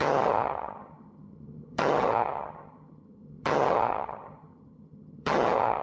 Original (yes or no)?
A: no